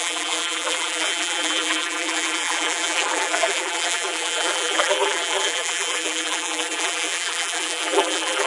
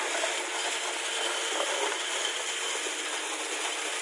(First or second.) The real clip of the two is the second